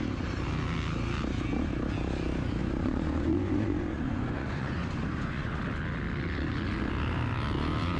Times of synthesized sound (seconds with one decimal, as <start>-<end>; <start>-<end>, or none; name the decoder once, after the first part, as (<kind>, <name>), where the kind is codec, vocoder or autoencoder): 2.6-5.6 (vocoder, Vocos)